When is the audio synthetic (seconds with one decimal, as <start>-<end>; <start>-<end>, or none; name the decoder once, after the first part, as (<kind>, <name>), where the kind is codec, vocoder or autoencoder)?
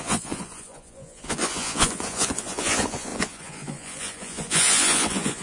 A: 0.0-5.4 (vocoder, Vocos)